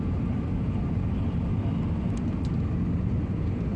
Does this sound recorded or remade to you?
remade